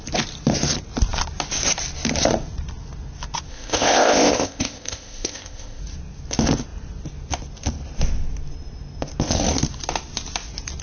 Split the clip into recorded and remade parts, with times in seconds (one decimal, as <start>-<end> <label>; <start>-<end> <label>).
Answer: 0.0-3.5 recorded; 3.5-5.8 remade; 5.8-10.8 recorded